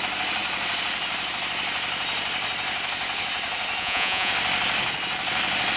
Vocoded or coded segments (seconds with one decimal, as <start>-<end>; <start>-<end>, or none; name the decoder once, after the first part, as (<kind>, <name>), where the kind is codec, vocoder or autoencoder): 3.8-4.3 (vocoder, Vocos)